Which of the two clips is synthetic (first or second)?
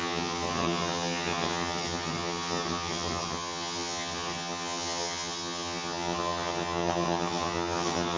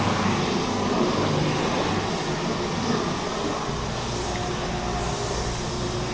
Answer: first